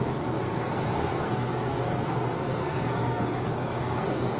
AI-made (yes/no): yes